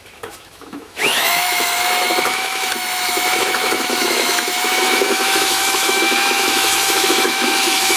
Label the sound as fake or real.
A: fake